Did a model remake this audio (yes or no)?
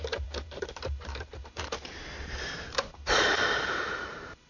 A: yes